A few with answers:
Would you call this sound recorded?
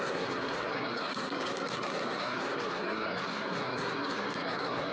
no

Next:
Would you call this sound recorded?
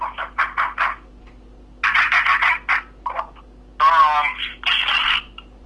yes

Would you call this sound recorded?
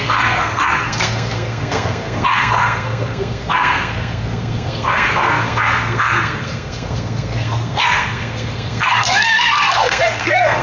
no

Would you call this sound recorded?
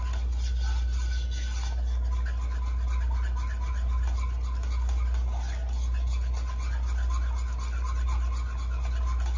yes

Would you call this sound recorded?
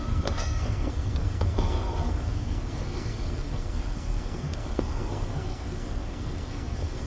no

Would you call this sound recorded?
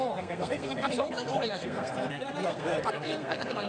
no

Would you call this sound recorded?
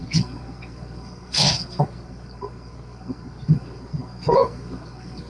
no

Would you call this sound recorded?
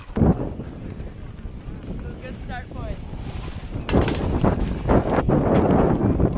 yes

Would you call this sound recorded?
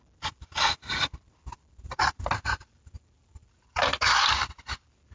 yes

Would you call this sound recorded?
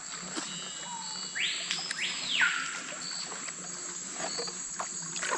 yes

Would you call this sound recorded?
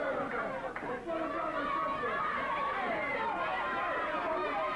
yes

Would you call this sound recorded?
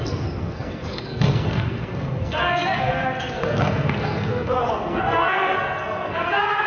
no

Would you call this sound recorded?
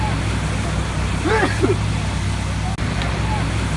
yes